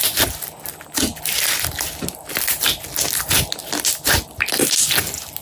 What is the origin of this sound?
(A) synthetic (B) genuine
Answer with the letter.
B